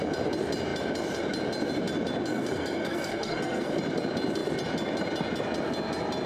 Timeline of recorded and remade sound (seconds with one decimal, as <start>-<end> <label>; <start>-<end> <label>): 0.0-2.3 recorded; 2.3-3.7 remade; 3.7-6.3 recorded